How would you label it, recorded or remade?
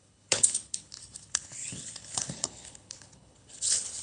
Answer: remade